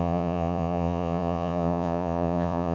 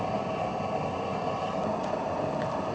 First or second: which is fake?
first